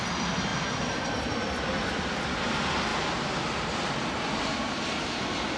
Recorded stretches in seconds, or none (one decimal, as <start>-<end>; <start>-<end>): 0.0-5.6